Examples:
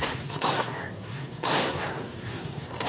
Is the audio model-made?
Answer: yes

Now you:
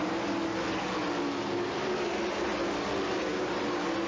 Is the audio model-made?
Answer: no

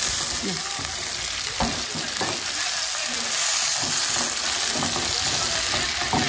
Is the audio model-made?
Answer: no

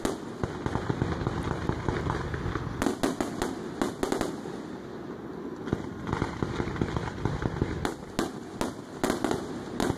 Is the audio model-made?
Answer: no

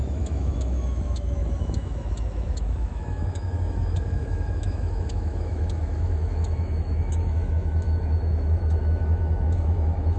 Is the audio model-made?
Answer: yes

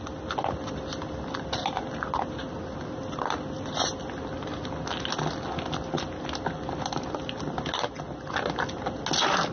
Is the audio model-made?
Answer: no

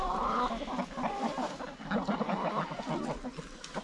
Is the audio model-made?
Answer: no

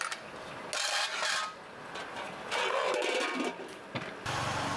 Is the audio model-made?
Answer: no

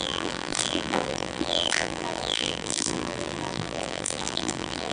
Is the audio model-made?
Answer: yes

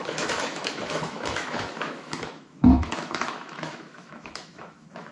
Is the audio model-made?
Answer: yes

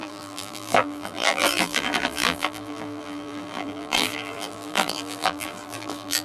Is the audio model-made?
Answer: yes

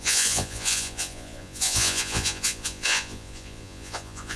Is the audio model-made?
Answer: yes